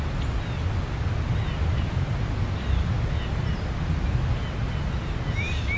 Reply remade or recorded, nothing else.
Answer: recorded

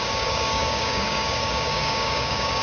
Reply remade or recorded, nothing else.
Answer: remade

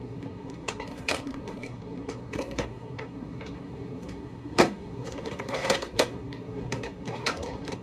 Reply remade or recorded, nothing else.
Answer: remade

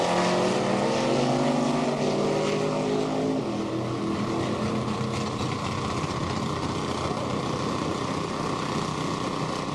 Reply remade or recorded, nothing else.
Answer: recorded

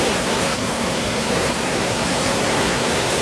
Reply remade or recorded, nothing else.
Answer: remade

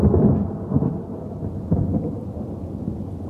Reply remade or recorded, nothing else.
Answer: recorded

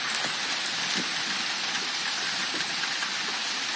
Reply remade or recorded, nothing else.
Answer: recorded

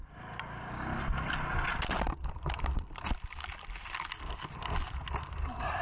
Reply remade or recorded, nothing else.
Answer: recorded